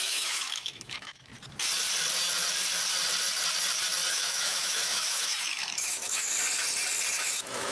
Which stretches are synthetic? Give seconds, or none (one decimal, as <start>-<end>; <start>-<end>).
0.0-1.3; 4.1-6.3; 7.1-7.7